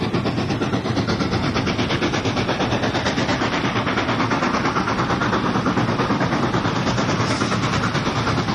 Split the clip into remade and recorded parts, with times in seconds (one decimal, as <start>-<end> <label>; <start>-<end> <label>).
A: 0.0-3.3 recorded; 3.3-3.9 remade; 3.9-8.5 recorded